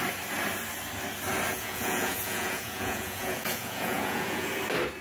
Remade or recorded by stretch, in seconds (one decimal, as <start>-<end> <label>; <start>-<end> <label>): 0.0-1.5 recorded; 1.5-4.5 remade; 4.5-5.0 recorded